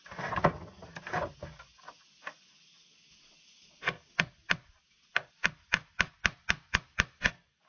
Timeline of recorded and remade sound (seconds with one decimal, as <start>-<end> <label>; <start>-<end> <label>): 0.0-7.7 recorded